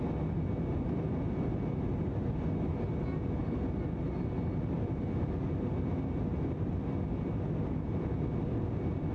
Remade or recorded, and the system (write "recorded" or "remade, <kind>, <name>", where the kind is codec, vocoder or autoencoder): recorded